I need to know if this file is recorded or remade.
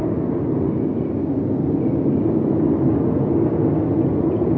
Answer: recorded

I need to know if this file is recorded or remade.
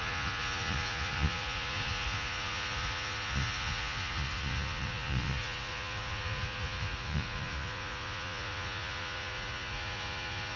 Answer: remade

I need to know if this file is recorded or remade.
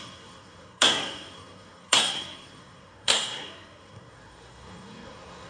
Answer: remade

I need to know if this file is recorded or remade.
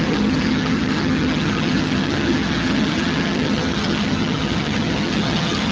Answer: remade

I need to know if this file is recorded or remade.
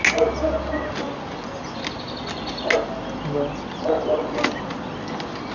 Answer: recorded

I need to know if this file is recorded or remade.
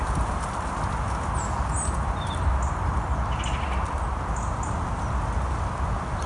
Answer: recorded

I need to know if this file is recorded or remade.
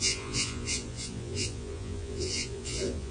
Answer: remade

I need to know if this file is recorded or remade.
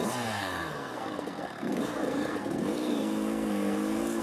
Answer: remade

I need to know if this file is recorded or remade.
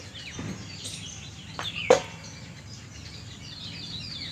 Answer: recorded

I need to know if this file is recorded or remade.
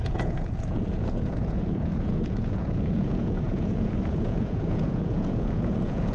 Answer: remade